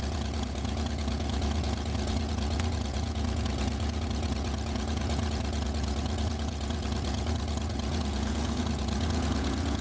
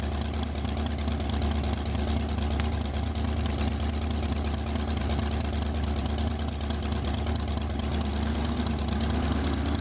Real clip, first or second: second